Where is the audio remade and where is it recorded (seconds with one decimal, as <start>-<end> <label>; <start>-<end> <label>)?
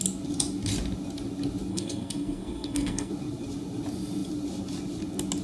0.0-1.7 recorded; 1.7-3.1 remade; 3.1-5.4 recorded